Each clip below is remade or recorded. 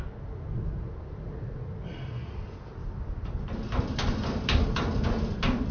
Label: recorded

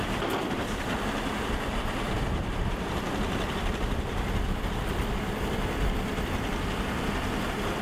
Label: recorded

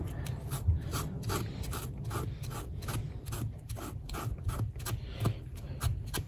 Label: recorded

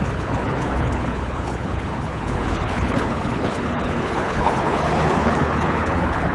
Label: remade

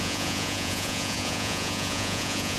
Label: remade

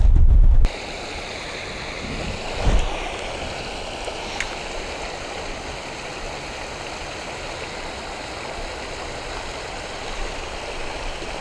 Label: recorded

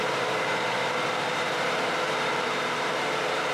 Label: remade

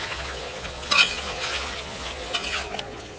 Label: remade